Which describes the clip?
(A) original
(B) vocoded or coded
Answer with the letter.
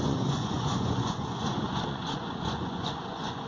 B